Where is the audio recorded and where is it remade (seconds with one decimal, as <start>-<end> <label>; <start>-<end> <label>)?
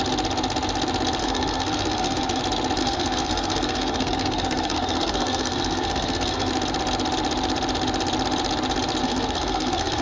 0.0-1.2 recorded; 1.2-2.4 remade; 2.4-2.8 recorded; 2.8-6.5 remade; 6.5-9.0 recorded; 9.0-10.0 remade